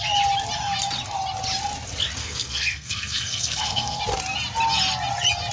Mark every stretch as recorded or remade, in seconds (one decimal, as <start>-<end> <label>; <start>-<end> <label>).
0.0-2.2 recorded; 2.2-4.0 remade; 4.0-5.5 recorded